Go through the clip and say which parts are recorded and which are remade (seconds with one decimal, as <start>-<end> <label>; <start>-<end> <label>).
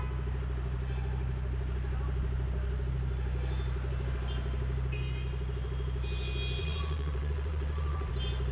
0.0-6.6 recorded; 6.6-8.1 remade; 8.1-8.5 recorded